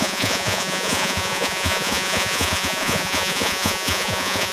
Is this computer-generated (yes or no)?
yes